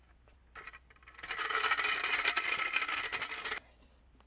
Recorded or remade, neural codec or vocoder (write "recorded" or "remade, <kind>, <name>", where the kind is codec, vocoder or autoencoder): recorded